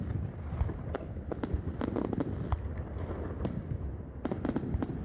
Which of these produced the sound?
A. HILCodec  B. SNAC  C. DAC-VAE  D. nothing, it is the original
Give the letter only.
D